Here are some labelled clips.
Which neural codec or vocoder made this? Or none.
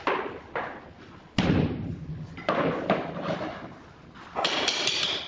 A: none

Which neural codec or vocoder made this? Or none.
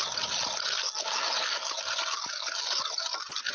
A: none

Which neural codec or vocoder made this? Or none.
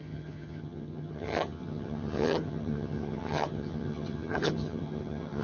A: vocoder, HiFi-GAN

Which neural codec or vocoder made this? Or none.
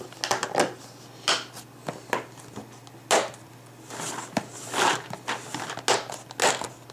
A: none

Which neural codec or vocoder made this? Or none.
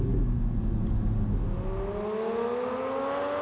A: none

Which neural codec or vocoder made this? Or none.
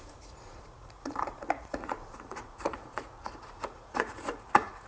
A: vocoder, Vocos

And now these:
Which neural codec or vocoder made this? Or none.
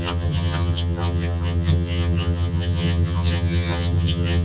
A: vocoder, HiFi-GAN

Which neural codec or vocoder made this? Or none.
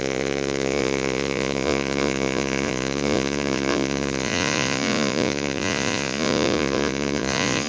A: vocoder, Vocos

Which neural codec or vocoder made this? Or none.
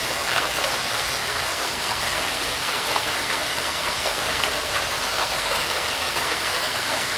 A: codec, SNAC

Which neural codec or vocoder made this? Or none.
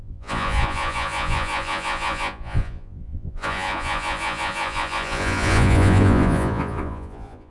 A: vocoder, Vocos